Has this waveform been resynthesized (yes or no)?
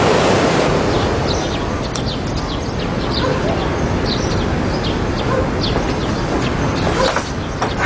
no